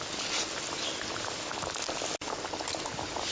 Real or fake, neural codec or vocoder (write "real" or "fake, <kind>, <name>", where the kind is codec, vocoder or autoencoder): real